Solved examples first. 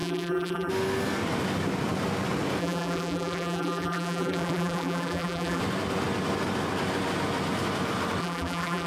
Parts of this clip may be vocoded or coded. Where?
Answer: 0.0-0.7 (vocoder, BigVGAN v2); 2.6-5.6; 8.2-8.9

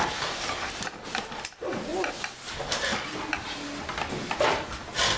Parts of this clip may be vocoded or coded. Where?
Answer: none

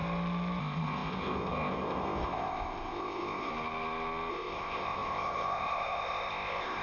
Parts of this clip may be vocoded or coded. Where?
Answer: 0.6-3.5 (codec, ZipCodec); 4.3-6.8

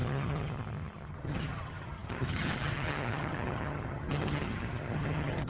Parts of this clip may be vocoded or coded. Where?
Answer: 0.0-5.5 (vocoder, HiFi-GAN)